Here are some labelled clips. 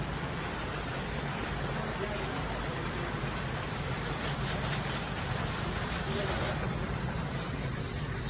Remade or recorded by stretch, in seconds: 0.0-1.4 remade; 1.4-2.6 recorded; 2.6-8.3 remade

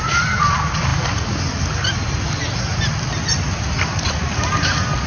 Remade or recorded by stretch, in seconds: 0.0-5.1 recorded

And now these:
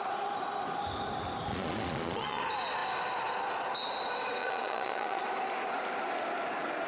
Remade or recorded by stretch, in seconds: 0.0-1.5 recorded; 1.5-2.4 remade; 2.4-4.4 recorded; 4.4-5.2 remade; 5.2-6.9 recorded

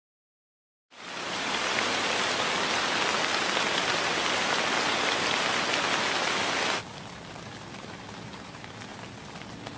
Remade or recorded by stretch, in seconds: 0.0-9.8 recorded

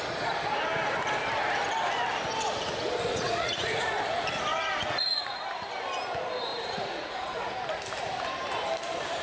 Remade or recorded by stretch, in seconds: 0.0-3.1 recorded; 3.1-3.7 remade; 3.7-4.5 recorded; 4.5-5.4 remade; 5.4-6.5 recorded; 6.5-7.5 remade; 7.5-9.2 recorded

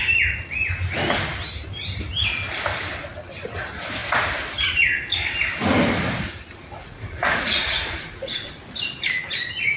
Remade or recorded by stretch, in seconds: 0.0-6.8 recorded; 6.8-8.5 remade; 8.5-9.8 recorded